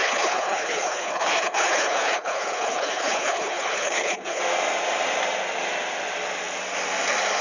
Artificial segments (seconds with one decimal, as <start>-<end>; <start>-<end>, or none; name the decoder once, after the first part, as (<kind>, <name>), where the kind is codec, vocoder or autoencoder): 0.0-4.4 (codec, HILCodec)